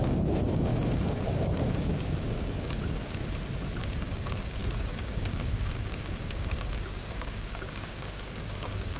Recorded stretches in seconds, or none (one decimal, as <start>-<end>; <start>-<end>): 3.2-3.8